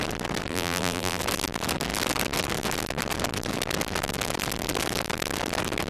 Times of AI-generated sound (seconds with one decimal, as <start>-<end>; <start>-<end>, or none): 0.5-1.2